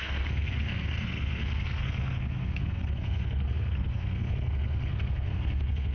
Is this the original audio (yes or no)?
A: no